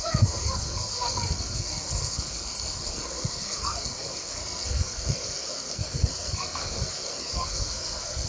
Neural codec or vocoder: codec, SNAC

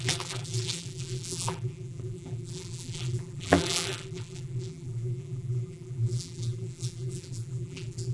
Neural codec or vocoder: vocoder, BigVGAN v2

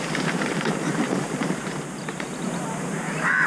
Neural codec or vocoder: vocoder, BigVGAN v2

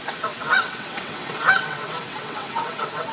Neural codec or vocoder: vocoder, WaveNeXt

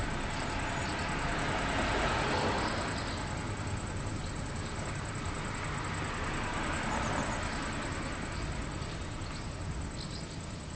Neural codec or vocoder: none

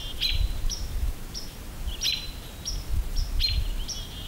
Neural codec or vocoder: none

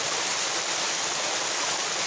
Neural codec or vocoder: none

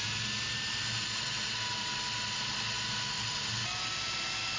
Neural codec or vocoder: none